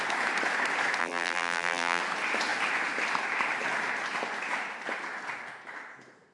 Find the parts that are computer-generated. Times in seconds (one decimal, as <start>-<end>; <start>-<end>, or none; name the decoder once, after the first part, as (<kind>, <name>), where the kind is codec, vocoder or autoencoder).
1.0-2.0 (vocoder, BigVGAN v2)

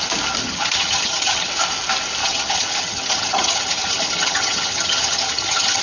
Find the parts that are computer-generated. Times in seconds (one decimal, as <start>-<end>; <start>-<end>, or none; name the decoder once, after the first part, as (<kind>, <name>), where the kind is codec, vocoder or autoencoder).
0.4-1.5 (vocoder, HiFi-GAN); 2.2-5.8

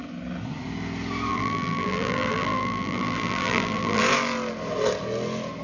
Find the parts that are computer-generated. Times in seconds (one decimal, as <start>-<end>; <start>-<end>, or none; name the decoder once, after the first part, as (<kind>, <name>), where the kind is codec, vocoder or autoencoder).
1.3-4.0 (vocoder, BigVGAN v2)

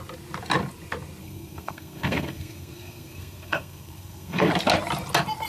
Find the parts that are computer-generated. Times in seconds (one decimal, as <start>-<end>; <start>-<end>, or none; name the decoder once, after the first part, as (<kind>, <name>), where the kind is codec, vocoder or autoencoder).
1.2-4.5 (codec, SNAC)

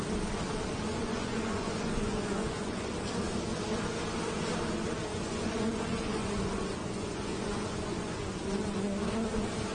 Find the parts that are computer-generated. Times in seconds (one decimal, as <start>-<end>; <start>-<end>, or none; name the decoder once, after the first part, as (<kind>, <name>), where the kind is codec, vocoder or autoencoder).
0.9-2.9 (vocoder, Vocos); 5.1-6.3; 6.8-8.3

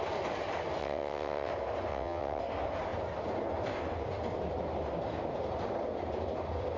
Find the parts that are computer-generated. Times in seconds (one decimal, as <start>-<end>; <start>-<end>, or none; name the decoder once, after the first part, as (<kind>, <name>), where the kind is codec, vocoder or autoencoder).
0.8-1.5 (vocoder, WaveNeXt); 1.9-2.4